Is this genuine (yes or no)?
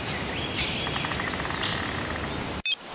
yes